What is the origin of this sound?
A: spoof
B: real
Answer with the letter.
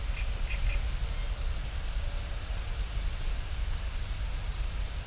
B